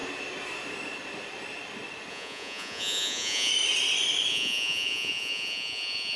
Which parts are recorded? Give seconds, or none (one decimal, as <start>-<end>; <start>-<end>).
0.0-2.1; 3.5-4.3